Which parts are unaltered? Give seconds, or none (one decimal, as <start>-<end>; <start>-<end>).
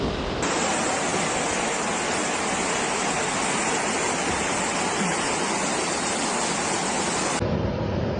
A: 0.0-8.2